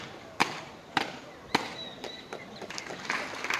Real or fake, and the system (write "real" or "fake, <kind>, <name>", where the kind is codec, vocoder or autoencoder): fake, vocoder, BigVGAN v2